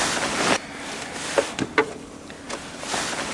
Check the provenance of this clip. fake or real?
real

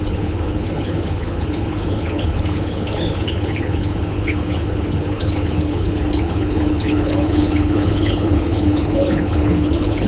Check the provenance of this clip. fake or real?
fake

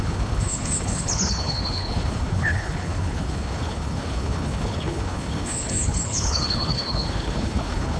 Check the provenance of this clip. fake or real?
fake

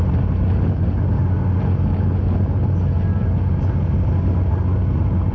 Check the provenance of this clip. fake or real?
real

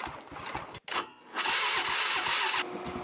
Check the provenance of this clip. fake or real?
real